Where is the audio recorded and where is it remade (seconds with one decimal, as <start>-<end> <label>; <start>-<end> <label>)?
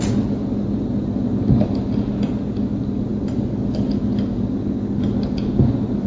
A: 0.0-6.1 recorded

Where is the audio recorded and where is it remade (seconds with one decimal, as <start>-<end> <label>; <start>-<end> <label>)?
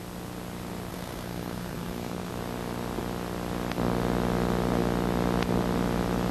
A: 0.0-0.9 recorded; 0.9-2.3 remade; 2.3-6.3 recorded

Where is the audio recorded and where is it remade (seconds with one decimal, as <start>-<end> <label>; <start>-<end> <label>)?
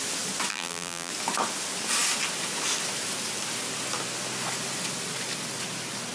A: 0.0-0.5 recorded; 0.5-1.1 remade; 1.1-6.1 recorded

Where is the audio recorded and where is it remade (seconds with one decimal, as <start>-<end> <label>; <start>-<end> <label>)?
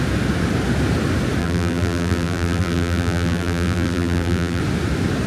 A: 0.0-1.4 recorded; 1.4-4.6 remade; 4.6-5.3 recorded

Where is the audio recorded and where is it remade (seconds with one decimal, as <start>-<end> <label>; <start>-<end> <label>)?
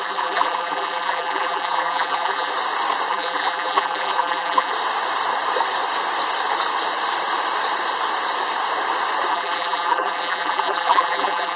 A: 0.0-2.5 remade; 2.5-3.1 recorded; 3.1-4.7 remade; 4.7-9.3 recorded; 9.3-11.6 remade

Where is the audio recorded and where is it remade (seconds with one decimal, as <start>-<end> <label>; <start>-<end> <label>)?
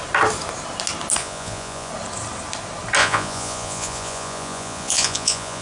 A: 0.0-1.2 recorded; 1.2-1.9 remade; 1.9-3.0 recorded; 3.0-5.6 remade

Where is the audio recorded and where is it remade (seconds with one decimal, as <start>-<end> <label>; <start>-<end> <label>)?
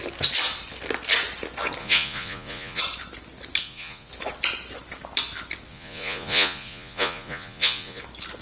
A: 0.0-1.8 recorded; 1.8-2.8 remade; 2.8-3.6 recorded; 3.6-4.1 remade; 4.1-5.7 recorded; 5.7-8.0 remade; 8.0-8.4 recorded